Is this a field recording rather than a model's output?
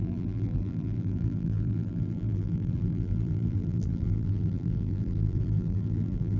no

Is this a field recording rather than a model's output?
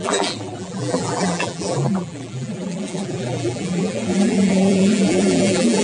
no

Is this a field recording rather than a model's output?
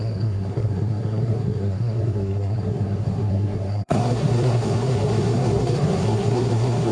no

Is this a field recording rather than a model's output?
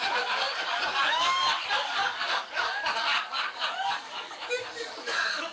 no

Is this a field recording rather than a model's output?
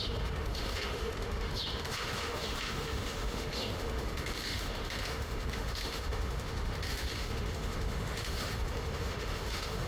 no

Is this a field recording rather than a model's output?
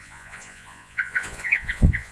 no